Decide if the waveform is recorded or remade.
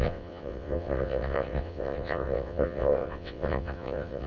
remade